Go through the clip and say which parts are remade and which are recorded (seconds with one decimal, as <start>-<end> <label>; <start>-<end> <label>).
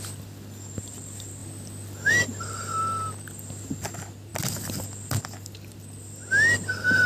0.0-7.1 recorded